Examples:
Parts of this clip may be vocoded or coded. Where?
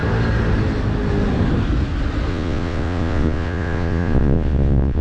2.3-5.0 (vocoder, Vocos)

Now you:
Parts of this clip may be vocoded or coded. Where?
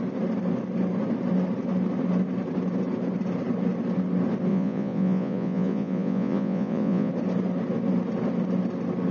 4.5-7.1 (vocoder, Vocos)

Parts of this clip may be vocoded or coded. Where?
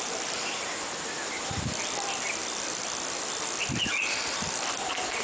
none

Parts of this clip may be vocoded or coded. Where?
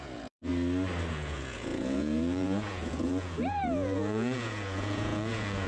0.0-0.5 (vocoder, Vocos); 1.1-5.7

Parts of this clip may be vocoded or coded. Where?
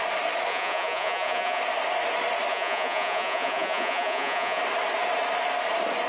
0.5-1.6 (vocoder, Vocos); 2.5-4.6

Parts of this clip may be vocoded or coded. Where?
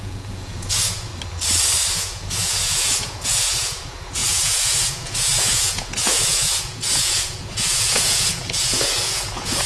0.0-1.1 (vocoder, Vocos); 1.9-9.7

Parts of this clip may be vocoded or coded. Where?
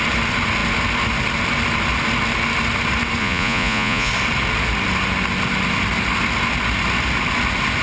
3.2-4.1 (vocoder, Vocos)